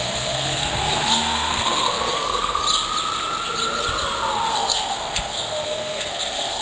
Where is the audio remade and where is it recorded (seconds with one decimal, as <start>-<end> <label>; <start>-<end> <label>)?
0.0-2.6 remade; 2.6-4.5 recorded; 4.5-6.6 remade